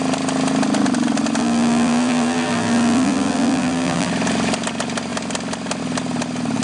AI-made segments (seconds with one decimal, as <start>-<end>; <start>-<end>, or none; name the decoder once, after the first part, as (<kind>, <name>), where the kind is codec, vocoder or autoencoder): 1.4-4.1 (vocoder, BigVGAN v2)